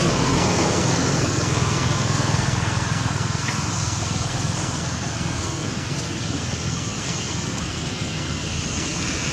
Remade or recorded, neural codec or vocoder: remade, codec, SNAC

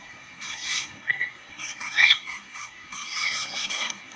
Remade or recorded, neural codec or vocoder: remade, codec, SNAC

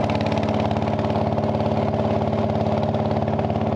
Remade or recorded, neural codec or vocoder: recorded